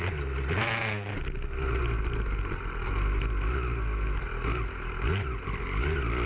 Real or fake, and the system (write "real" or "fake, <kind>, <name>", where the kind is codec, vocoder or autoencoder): real